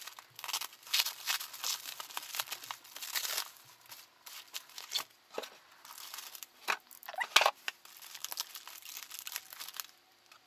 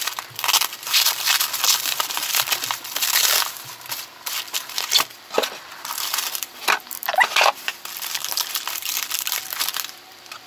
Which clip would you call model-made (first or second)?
second